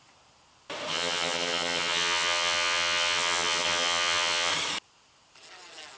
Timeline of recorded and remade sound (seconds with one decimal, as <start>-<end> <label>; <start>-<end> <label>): 0.0-0.9 recorded; 0.9-4.5 remade; 4.5-6.0 recorded